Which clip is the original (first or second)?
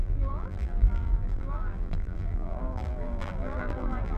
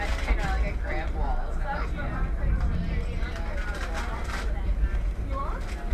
second